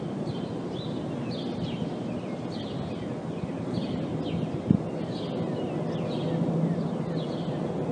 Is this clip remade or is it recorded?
recorded